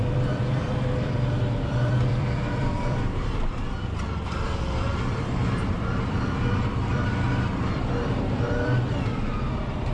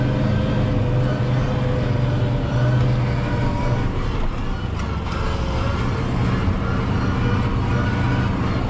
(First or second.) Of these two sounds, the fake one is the first